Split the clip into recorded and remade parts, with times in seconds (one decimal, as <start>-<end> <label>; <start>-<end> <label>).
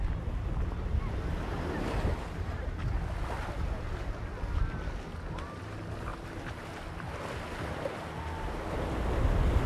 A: 0.0-9.7 recorded